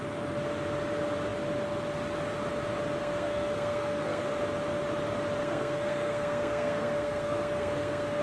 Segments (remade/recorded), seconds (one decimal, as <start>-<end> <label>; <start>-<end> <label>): 0.0-3.0 recorded; 3.0-4.2 remade; 4.2-5.4 recorded; 5.4-8.2 remade